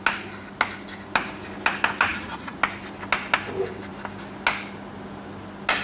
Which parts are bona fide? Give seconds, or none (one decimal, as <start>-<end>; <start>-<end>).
0.0-2.1; 2.6-5.8